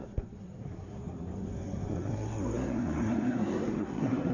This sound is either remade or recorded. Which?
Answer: remade